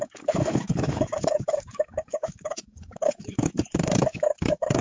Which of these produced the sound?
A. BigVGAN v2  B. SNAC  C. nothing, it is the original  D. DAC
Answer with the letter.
D